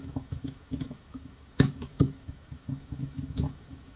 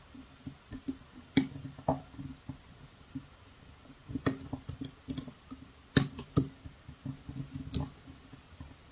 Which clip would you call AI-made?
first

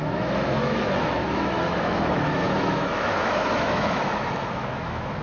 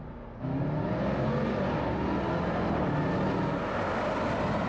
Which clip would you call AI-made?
first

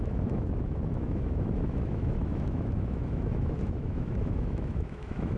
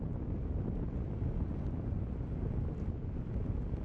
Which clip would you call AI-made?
first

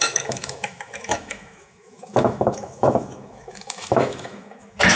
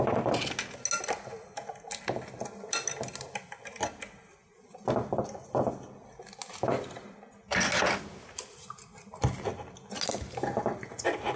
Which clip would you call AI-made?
first